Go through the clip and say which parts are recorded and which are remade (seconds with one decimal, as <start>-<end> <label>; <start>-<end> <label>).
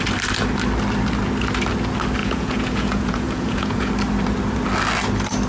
0.0-2.2 recorded; 2.2-3.9 remade; 3.9-5.5 recorded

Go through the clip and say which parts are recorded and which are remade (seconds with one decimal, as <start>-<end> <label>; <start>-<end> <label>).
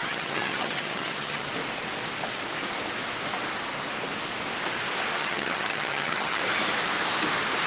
0.0-1.5 remade; 1.5-5.2 recorded; 5.2-6.4 remade; 6.4-7.7 recorded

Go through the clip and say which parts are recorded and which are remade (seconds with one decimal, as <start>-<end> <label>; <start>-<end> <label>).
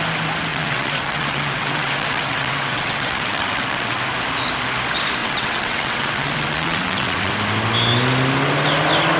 0.0-0.5 recorded; 0.5-4.0 remade; 4.0-5.2 recorded; 5.2-7.3 remade; 7.3-9.2 recorded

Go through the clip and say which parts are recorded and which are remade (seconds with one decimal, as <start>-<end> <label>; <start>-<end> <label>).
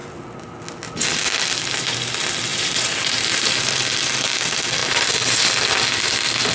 0.0-2.5 recorded; 2.5-3.5 remade; 3.5-4.8 recorded; 4.8-5.4 remade; 5.4-6.5 recorded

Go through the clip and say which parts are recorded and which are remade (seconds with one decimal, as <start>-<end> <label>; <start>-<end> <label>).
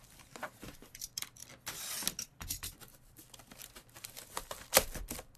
0.0-1.4 remade; 1.4-2.2 recorded; 2.2-5.4 remade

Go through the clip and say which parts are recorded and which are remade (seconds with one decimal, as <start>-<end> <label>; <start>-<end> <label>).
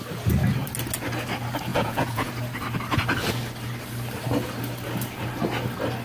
0.0-1.7 recorded; 1.7-2.3 remade; 2.3-6.0 recorded